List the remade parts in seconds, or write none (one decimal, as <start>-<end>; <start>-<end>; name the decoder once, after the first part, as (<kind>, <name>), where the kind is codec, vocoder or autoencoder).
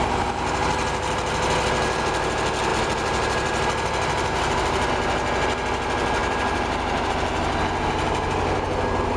2.7-4.9 (vocoder, BigVGAN v2); 6.2-7.1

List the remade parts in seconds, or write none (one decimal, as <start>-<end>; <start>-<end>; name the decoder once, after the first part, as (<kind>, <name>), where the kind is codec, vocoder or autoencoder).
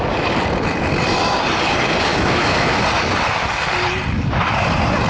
2.1-2.8 (autoencoder, DAC-VAE)